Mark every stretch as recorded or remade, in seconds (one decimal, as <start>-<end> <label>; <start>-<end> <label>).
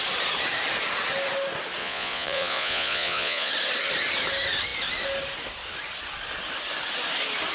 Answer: 0.0-1.8 recorded; 1.8-3.5 remade; 3.5-7.5 recorded